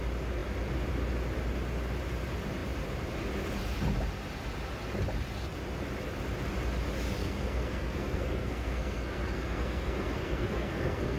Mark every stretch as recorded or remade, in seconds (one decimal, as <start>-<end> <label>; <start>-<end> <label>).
0.0-7.2 recorded; 7.2-11.2 remade